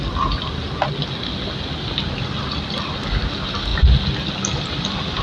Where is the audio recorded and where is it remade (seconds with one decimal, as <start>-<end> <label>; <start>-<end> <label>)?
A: 0.0-5.2 recorded